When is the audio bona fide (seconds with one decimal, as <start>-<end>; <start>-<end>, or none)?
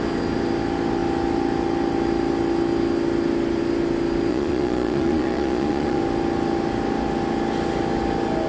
0.0-4.3; 6.0-8.5